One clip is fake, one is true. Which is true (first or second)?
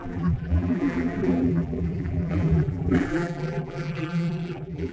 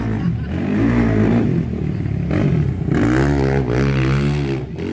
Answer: second